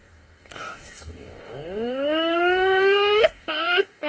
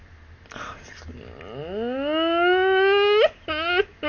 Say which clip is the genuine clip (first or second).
second